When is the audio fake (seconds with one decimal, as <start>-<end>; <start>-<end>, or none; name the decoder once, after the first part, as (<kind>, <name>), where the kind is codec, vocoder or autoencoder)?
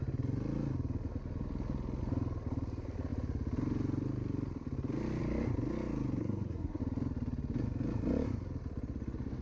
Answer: 6.2-6.8 (codec, SNAC)